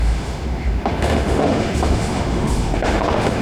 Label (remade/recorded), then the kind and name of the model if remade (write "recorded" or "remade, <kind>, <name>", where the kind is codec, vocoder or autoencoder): remade, autoencoder, DAC-VAE